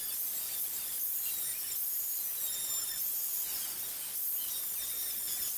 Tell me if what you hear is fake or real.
real